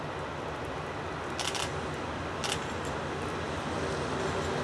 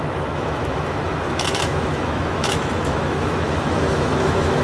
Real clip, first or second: first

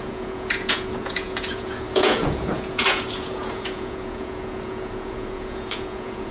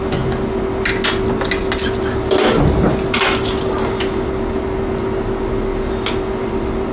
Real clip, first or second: second